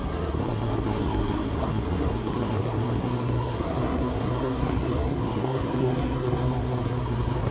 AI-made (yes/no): yes